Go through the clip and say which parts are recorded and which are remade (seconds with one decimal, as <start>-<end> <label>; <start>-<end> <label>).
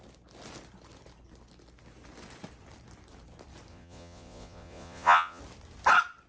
0.0-3.7 recorded; 3.7-5.4 remade; 5.4-6.3 recorded